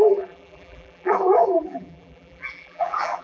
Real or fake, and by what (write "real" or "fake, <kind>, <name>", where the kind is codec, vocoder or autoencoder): fake, vocoder, BigVGAN v2